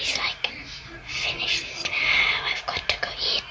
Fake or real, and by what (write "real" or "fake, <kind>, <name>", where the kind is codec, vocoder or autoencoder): real